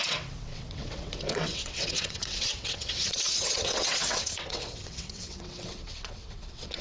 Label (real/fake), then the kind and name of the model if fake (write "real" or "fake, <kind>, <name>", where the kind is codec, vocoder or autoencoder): fake, vocoder, WaveNeXt